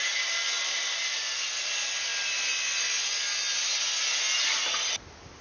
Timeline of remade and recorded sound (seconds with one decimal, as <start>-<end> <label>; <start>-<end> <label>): 0.0-5.4 recorded